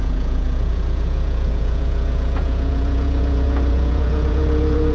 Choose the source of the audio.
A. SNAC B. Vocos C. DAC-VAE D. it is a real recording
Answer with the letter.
B